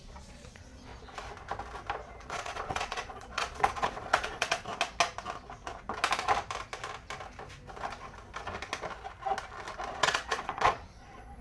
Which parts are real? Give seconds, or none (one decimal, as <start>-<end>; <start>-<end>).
0.9-2.2; 4.7-9.9

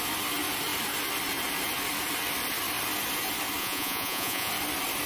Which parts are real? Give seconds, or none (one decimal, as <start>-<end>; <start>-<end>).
0.0-3.6; 4.5-5.1

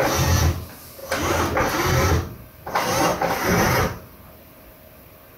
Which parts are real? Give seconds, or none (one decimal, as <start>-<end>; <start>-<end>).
0.0-5.4

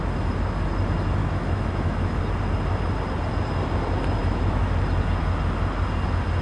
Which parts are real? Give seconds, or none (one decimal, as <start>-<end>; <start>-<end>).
0.0-1.2; 2.2-4.2; 4.7-6.4

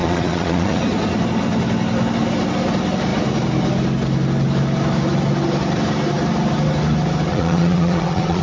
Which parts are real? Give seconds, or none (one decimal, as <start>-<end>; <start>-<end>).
0.8-7.3

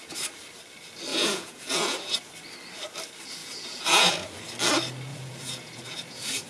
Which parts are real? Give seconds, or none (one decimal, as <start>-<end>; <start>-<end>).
0.0-1.1; 2.2-3.4; 4.4-5.1

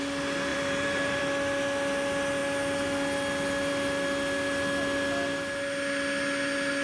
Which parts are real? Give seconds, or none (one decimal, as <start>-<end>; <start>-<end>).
0.0-0.5; 1.2-6.8